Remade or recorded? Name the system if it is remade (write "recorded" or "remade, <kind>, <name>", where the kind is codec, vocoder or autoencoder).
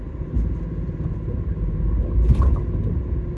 recorded